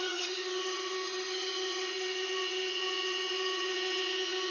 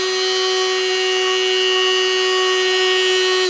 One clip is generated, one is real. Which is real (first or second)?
second